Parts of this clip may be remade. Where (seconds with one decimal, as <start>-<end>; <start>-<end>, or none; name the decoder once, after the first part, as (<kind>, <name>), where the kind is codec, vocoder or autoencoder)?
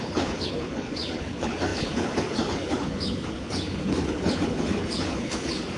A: 0.0-5.8 (codec, HILCodec)